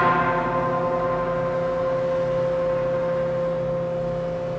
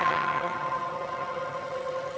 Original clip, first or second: first